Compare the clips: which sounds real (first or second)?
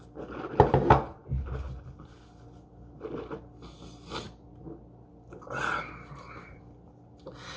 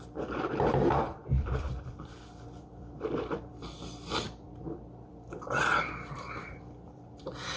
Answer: first